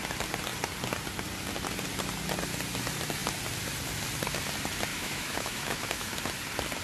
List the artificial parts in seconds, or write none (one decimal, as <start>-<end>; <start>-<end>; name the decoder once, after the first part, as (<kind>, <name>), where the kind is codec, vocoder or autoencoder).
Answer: 4.9-6.2 (autoencoder, DAC-VAE)